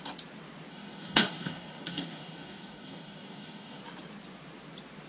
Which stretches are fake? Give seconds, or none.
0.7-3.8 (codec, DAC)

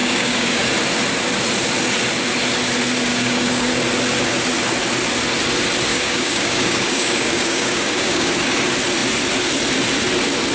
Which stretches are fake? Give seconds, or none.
0.0-0.6 (codec, DAC); 3.1-3.7; 5.9-8.3

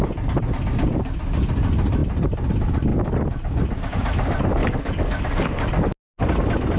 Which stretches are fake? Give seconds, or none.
4.6-5.6 (codec, DAC)

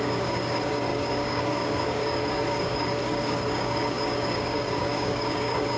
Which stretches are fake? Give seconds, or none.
0.0-5.8 (codec, DAC)

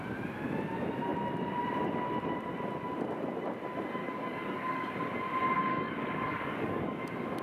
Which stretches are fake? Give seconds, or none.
4.0-4.9 (codec, DAC); 5.7-7.0

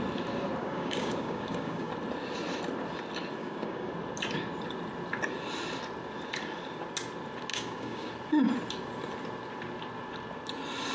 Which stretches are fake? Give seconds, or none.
0.6-1.9 (codec, DAC); 3.4-3.9; 7.5-8.1

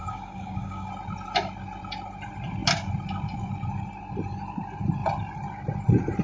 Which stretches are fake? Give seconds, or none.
0.0-0.9 (codec, DAC)

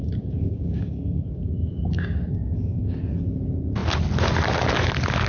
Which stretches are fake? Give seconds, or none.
0.0-3.0 (codec, DAC)